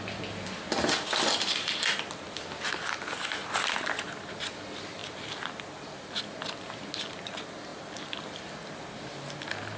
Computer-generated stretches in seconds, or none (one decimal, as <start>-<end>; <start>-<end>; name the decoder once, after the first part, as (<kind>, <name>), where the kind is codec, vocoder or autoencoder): none